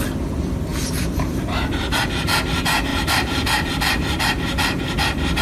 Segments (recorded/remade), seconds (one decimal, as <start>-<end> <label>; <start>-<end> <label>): 0.0-0.7 recorded; 0.7-2.1 remade; 2.1-2.9 recorded; 2.9-3.7 remade; 3.7-5.4 recorded